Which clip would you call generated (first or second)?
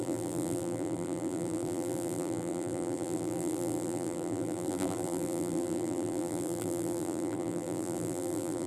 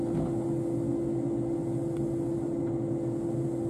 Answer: first